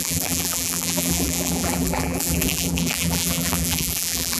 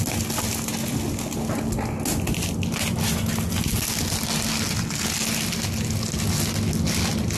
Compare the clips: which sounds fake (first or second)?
first